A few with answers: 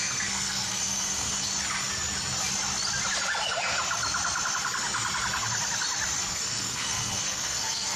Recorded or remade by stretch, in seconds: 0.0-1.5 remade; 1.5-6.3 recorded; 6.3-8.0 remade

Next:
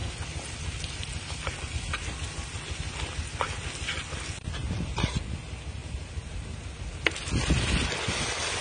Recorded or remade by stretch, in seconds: 0.0-8.6 recorded

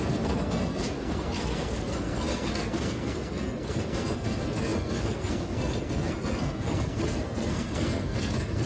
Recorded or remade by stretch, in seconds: 0.0-8.7 remade

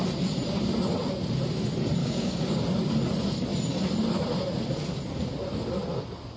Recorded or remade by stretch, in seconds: 0.0-2.0 recorded; 2.0-2.6 remade; 2.6-6.4 recorded

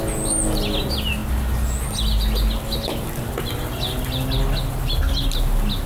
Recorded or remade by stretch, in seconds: 0.0-5.9 recorded

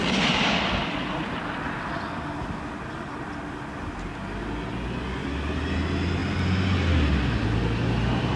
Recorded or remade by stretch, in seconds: 0.0-8.4 recorded